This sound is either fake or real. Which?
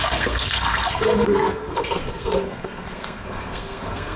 fake